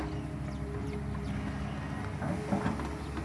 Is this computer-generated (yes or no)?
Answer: no